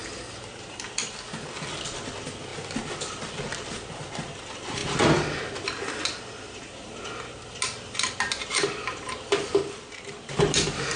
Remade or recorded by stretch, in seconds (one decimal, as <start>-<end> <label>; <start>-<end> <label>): 0.0-8.5 recorded; 8.5-9.1 remade; 9.1-9.6 recorded; 9.6-10.3 remade; 10.3-11.0 recorded